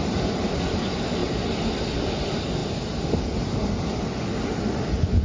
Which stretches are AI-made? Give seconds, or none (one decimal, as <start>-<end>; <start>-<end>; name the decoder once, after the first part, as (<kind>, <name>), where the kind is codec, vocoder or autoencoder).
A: none